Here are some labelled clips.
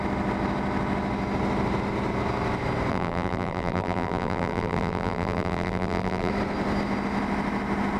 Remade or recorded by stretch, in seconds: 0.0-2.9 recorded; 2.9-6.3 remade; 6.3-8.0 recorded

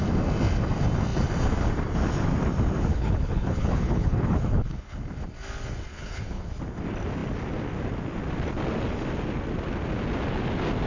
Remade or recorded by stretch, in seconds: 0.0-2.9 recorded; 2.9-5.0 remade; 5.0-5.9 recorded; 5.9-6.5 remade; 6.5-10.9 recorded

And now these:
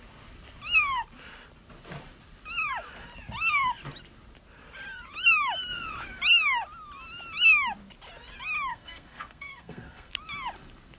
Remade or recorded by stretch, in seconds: 0.0-8.7 recorded; 8.7-10.1 remade; 10.1-11.0 recorded

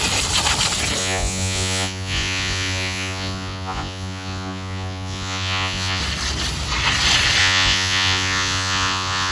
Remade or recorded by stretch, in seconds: 0.0-1.0 recorded; 1.0-6.0 remade; 6.0-7.4 recorded; 7.4-9.3 remade

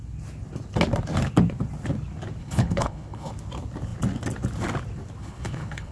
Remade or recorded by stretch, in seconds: 0.0-2.4 recorded; 2.4-3.3 remade; 3.3-5.2 recorded; 5.2-5.9 remade

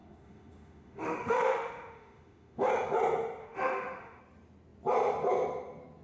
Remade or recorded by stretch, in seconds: 0.0-2.7 remade; 2.7-3.4 recorded; 3.4-4.2 remade; 4.2-6.0 recorded

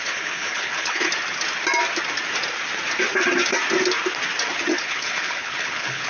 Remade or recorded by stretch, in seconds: 0.0-1.1 remade; 1.1-4.8 recorded; 4.8-6.1 remade